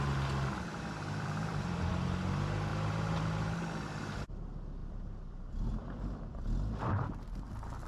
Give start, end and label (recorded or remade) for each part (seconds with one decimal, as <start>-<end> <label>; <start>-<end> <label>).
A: 0.0-0.7 recorded; 0.7-1.9 remade; 1.9-4.8 recorded; 4.8-6.2 remade; 6.2-7.9 recorded